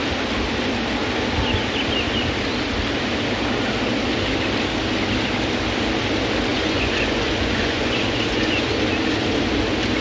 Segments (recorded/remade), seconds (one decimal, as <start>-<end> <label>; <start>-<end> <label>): 0.0-6.5 recorded; 6.5-8.7 remade; 8.7-10.0 recorded